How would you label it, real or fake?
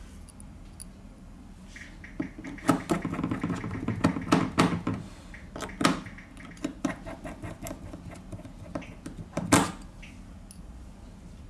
real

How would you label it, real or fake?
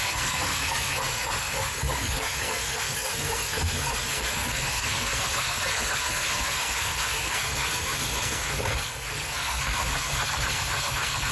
fake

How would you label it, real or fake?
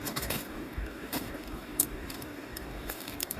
fake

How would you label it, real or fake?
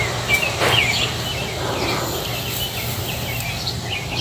real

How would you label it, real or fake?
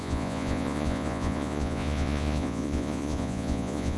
fake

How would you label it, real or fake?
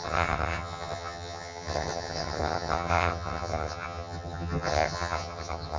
fake